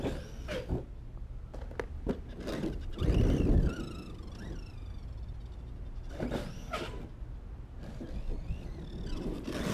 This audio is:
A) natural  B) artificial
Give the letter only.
A